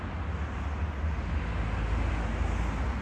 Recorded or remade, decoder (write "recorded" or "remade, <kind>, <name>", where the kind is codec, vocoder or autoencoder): recorded